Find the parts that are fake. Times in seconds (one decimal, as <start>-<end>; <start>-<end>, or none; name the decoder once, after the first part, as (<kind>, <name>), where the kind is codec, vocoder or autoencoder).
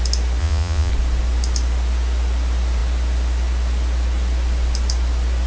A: 0.4-0.9 (vocoder, Vocos)